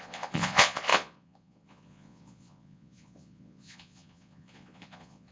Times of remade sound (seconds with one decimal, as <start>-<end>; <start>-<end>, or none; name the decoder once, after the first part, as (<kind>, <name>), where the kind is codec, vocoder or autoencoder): 0.0-5.3 (vocoder, Vocos)